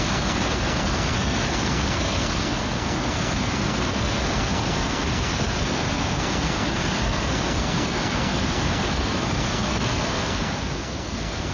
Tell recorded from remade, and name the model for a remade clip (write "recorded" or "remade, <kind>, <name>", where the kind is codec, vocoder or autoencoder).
remade, codec, SNAC